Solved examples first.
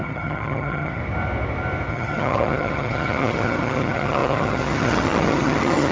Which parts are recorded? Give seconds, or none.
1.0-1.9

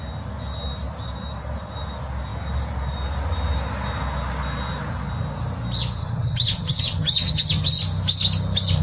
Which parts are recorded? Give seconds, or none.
0.0-6.0; 7.8-8.8

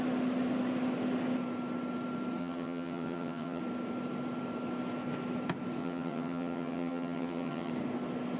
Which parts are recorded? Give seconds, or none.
0.0-2.4; 3.6-5.8; 7.7-8.4

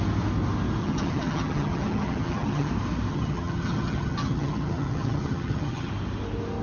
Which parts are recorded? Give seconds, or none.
0.0-0.8; 2.7-3.1; 5.9-6.6

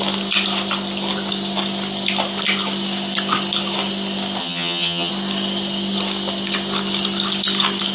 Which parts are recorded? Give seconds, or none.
0.0-4.4; 5.1-7.9

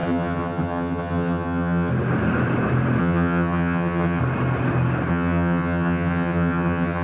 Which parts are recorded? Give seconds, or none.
1.9-3.0; 4.2-5.1